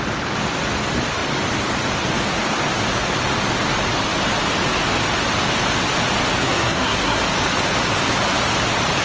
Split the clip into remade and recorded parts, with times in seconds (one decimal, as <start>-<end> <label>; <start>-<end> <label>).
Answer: 0.0-6.4 recorded; 6.4-7.2 remade; 7.2-9.0 recorded